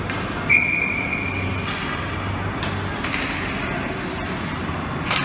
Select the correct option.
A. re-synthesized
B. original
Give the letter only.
B